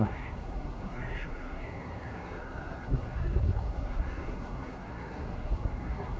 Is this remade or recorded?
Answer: remade